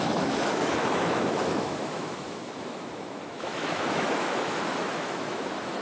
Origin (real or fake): fake